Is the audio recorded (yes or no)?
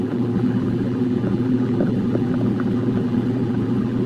no